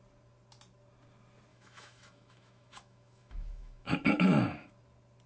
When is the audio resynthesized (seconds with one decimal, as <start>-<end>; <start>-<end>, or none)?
1.5-4.7